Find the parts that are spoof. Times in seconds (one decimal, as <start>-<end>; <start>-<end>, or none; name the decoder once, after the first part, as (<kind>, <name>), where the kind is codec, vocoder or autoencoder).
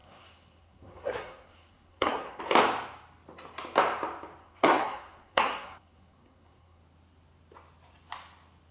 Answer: 0.0-2.4 (codec, SNAC); 4.4-6.8